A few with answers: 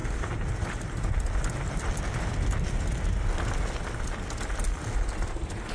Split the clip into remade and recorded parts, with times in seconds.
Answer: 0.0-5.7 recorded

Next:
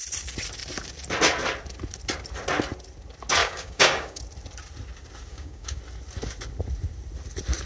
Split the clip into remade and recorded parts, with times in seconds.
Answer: 0.0-3.4 recorded; 3.4-4.2 remade; 4.2-5.3 recorded; 5.3-5.8 remade; 5.8-7.7 recorded

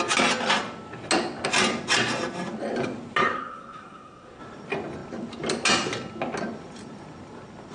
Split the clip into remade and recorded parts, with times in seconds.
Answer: 0.0-3.2 recorded; 3.2-4.4 remade; 4.4-7.7 recorded

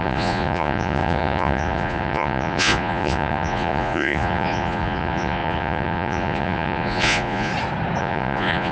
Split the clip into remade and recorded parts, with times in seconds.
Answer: 0.0-7.5 remade; 7.5-8.0 recorded; 8.0-8.7 remade

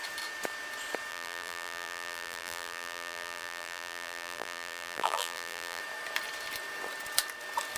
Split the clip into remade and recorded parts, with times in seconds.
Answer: 0.0-1.1 recorded; 1.1-5.8 remade; 5.8-7.8 recorded